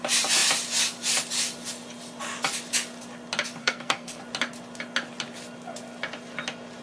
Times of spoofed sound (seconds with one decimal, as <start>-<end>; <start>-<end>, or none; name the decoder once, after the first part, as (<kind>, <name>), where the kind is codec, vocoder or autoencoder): 3.6-4.2 (codec, SNAC)